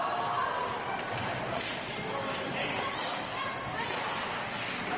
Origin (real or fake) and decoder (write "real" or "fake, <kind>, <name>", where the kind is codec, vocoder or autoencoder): real